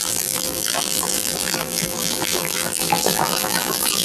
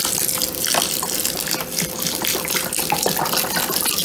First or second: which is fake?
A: first